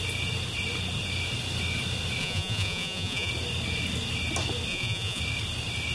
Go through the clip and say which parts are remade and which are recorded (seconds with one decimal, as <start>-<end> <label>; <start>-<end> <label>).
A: 0.0-2.2 recorded; 2.2-3.3 remade; 3.3-4.7 recorded; 4.7-5.2 remade; 5.2-5.9 recorded